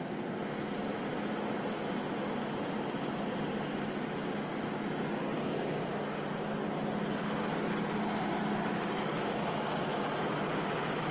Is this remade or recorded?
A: recorded